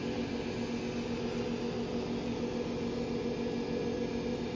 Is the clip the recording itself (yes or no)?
yes